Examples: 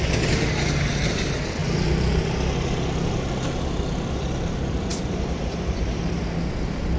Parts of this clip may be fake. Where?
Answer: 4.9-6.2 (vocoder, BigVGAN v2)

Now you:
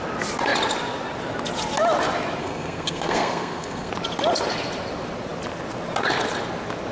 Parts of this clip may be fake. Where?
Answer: 2.4-3.9 (codec, SNAC)

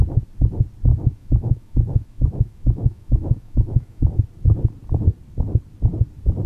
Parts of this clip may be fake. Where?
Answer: 0.9-4.1 (autoencoder, DAC-VAE)

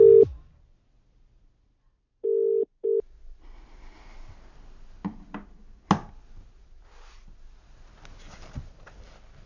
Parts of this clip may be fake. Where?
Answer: none